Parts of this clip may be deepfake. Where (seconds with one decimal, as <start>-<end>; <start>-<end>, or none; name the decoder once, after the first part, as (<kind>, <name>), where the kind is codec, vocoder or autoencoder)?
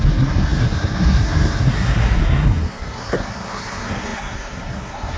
0.0-5.2 (codec, SNAC)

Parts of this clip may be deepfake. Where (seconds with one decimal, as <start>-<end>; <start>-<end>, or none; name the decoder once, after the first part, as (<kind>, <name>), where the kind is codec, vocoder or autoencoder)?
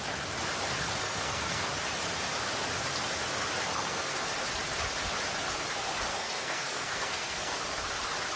1.0-1.7 (codec, SNAC); 3.7-4.2; 6.1-7.6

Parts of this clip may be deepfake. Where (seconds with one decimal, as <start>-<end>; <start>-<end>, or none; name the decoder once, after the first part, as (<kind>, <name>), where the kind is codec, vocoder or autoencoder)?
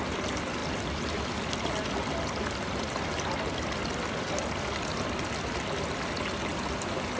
none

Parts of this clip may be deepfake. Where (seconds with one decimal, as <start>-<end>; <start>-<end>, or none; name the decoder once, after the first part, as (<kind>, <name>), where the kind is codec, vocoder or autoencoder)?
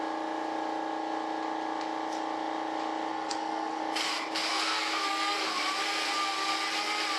3.1-3.8 (codec, SNAC); 4.5-5.6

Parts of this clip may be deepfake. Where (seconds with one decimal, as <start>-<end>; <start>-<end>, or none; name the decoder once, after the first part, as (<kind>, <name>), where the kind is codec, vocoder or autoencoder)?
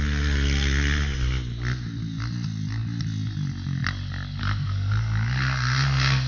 4.4-6.3 (codec, SNAC)